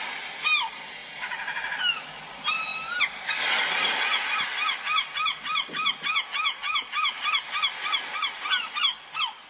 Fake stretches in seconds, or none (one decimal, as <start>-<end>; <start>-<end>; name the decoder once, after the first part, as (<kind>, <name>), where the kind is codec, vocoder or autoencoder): none